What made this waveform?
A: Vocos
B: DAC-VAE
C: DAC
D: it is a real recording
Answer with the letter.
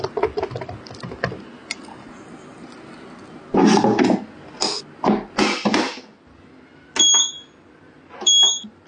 D